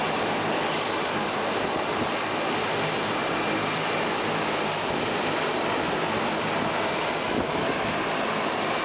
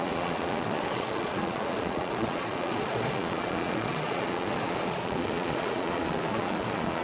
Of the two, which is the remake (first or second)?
second